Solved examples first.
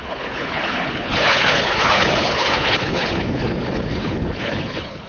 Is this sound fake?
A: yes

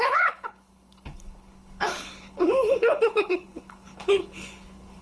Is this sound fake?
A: yes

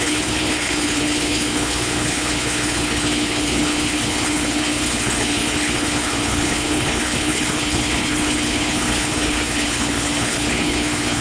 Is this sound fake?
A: yes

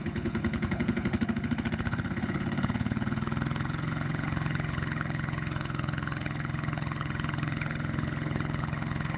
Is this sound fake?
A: yes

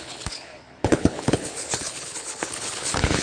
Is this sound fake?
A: yes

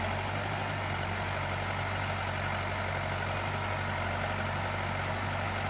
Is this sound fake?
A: no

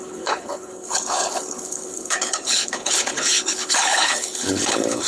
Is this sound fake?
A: yes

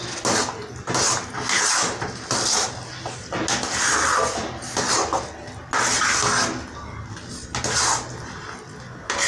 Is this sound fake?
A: no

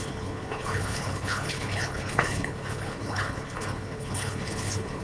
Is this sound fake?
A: yes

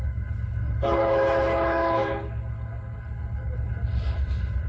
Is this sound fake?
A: yes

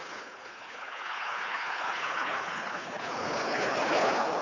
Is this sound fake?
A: yes